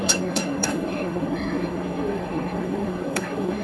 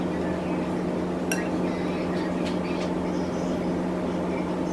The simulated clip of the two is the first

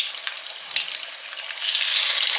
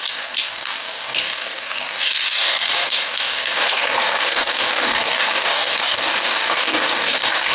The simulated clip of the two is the second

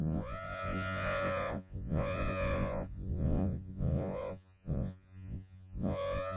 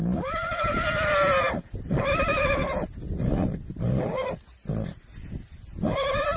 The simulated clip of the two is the first